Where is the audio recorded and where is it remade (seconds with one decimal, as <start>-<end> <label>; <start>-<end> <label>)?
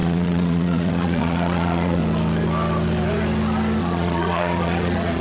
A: 0.0-2.0 remade; 2.0-3.8 recorded; 3.8-5.2 remade